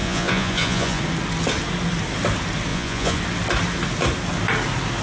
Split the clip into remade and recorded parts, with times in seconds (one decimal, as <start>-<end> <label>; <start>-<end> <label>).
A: 0.0-1.0 remade; 1.0-2.7 recorded; 2.7-3.2 remade; 3.2-5.0 recorded